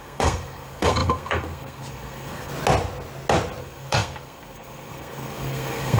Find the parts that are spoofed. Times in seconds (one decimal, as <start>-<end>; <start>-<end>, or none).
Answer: 0.0-2.5; 3.6-6.0